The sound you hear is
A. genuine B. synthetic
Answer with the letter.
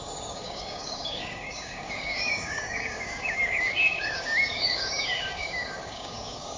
B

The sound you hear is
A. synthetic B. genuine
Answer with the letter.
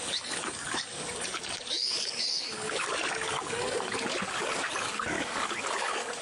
A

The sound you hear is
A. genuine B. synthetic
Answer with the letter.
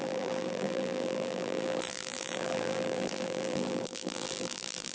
B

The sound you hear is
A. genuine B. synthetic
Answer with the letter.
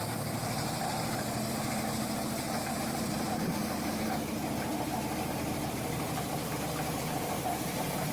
B